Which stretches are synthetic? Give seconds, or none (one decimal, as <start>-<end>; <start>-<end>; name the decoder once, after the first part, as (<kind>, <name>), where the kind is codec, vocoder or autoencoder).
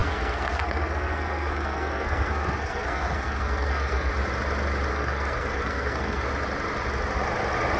0.0-4.1 (codec, SNAC); 4.9-6.3